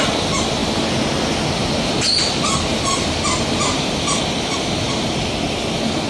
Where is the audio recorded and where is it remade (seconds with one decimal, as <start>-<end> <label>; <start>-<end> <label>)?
0.0-6.1 recorded